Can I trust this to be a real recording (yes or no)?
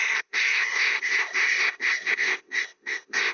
no